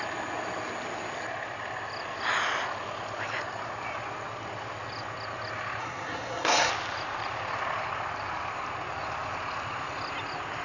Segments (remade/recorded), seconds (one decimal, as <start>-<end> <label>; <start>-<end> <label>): 0.0-5.8 recorded; 5.8-6.7 remade; 6.7-10.6 recorded